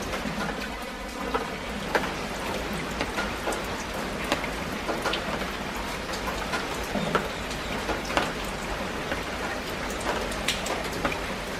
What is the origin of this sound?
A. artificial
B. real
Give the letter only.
B